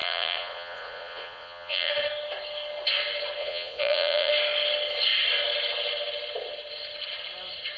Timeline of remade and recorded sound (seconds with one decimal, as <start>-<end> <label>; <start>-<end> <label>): 0.0-1.9 remade; 1.9-3.4 recorded; 3.4-4.3 remade; 4.3-7.8 recorded